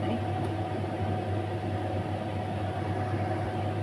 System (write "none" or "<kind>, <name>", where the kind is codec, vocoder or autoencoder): none